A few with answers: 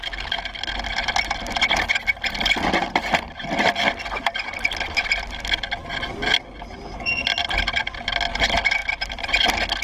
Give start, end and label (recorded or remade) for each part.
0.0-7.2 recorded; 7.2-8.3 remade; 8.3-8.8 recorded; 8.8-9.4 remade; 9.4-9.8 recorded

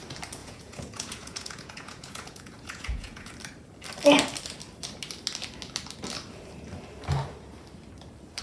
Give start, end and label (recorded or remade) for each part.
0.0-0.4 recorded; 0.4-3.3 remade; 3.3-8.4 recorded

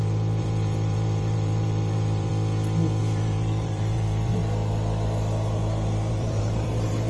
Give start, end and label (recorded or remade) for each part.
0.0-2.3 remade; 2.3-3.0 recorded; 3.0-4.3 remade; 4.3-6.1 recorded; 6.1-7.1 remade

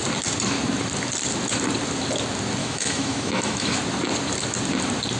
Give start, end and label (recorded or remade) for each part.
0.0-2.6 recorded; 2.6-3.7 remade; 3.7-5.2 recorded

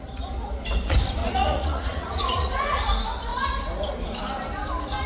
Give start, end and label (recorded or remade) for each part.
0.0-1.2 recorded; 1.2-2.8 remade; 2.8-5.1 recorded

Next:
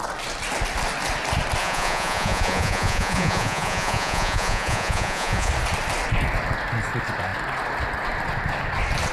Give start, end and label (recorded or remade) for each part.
0.0-1.6 recorded; 1.6-5.5 remade; 5.5-9.1 recorded

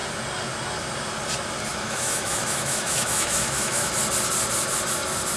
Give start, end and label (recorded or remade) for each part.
0.0-1.7 recorded; 1.7-3.9 remade; 3.9-5.4 recorded